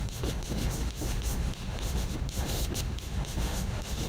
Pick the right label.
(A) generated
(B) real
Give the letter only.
A